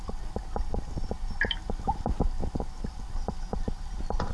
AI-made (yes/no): no